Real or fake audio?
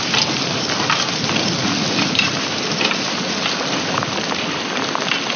real